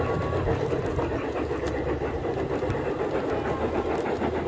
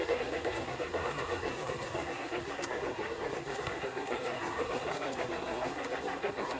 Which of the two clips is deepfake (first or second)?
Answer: second